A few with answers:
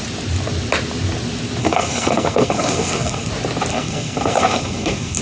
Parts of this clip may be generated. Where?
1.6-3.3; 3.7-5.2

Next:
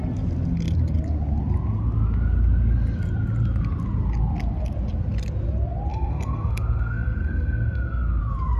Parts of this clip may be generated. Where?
5.9-8.2

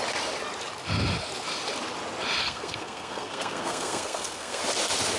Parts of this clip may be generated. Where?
2.4-4.6

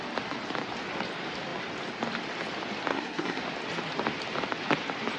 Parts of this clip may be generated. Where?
2.9-3.4

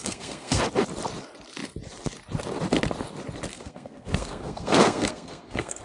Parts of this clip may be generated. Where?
0.0-0.6; 3.5-5.8

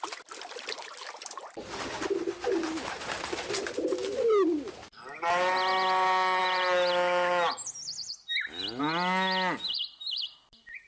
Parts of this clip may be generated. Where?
none

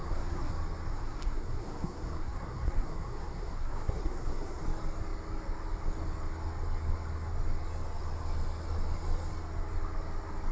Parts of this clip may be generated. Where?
0.0-0.5; 0.9-4.6